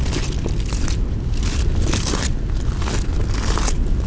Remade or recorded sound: recorded